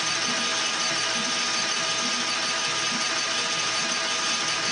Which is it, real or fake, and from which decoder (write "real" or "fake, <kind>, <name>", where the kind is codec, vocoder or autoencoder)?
real